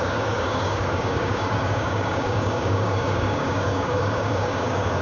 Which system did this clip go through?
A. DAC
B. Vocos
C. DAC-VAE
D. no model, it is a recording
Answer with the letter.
A